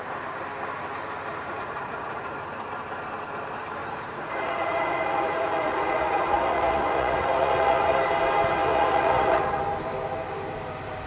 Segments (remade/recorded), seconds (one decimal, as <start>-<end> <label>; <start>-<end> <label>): 0.0-1.3 recorded; 1.3-2.4 remade; 2.4-3.8 recorded; 3.8-8.0 remade; 8.0-8.6 recorded; 8.6-9.6 remade; 9.6-11.1 recorded